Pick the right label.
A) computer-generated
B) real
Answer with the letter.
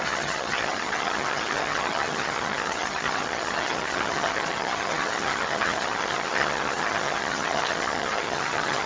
A